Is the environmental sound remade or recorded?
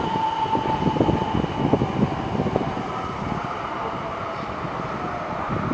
recorded